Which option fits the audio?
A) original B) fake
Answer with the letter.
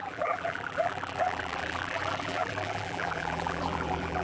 B